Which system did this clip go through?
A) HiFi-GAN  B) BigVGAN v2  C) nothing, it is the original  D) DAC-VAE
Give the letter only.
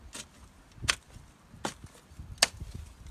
C